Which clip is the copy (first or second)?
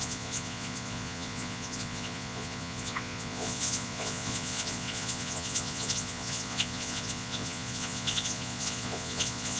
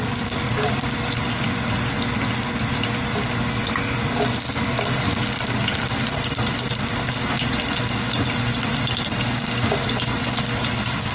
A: first